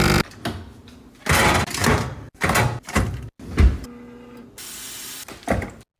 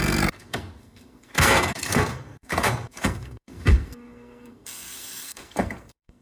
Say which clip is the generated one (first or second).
second